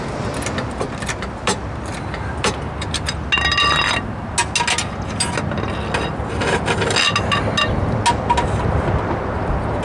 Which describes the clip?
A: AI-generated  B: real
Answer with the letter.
B